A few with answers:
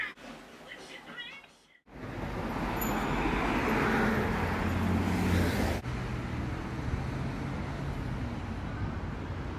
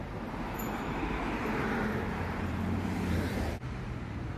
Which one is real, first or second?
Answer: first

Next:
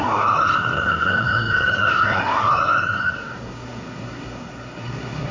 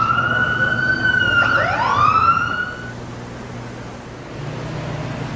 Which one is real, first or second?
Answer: second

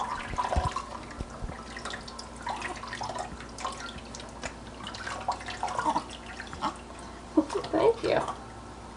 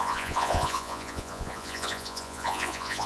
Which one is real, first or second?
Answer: first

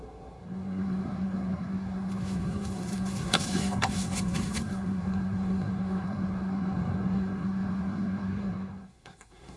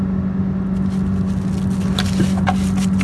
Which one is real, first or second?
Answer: second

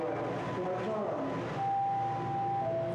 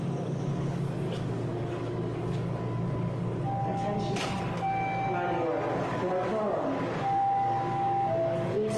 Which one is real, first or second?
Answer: first